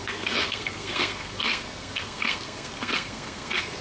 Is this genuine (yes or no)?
no